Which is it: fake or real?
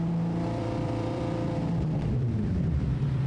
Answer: fake